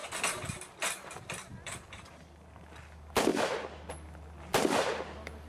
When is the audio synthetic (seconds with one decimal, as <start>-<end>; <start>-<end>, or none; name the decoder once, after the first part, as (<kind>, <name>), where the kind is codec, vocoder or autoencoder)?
0.7-3.3 (vocoder, BigVGAN v2); 3.9-5.5